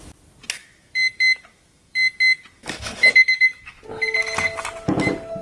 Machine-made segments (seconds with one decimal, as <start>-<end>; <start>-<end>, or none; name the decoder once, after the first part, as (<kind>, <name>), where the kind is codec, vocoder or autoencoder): 0.6-3.8 (autoencoder, DAC-VAE)